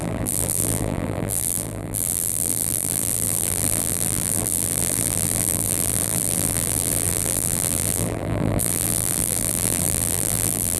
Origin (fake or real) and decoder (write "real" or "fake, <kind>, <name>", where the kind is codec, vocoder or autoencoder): fake, vocoder, BigVGAN v2